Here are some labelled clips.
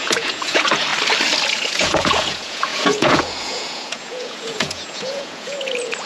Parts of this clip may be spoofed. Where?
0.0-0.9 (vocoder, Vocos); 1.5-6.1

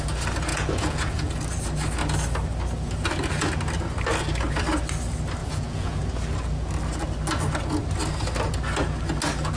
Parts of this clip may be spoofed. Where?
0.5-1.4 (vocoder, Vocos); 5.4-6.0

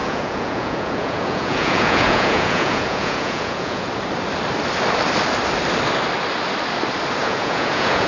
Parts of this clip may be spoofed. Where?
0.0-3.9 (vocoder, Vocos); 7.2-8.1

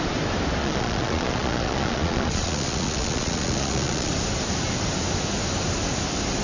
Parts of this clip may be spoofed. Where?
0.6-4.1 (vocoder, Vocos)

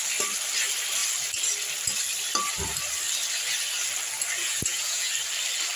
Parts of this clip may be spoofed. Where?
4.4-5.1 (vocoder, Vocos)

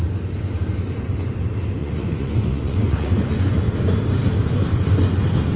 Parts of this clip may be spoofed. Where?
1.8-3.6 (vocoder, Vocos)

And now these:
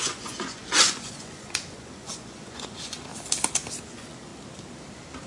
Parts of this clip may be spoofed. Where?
0.0-3.1 (vocoder, Vocos); 3.8-4.3